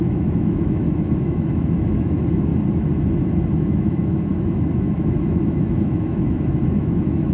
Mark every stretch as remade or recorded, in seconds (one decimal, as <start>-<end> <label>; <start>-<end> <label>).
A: 0.0-2.5 remade; 2.5-3.5 recorded; 3.5-7.3 remade